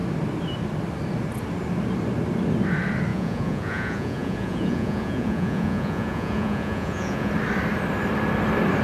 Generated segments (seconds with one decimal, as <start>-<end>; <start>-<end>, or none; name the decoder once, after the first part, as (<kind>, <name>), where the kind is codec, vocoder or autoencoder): 3.1-7.3 (vocoder, Vocos)

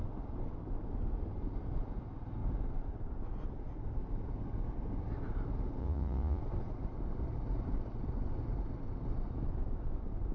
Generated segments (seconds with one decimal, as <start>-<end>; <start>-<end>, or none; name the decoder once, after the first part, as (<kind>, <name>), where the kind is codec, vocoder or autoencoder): 5.8-6.4 (vocoder, Vocos)